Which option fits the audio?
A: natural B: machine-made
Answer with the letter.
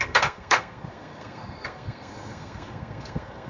B